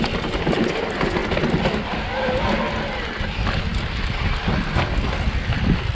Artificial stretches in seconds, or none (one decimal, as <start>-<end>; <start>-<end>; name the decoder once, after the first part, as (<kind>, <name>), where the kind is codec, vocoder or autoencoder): none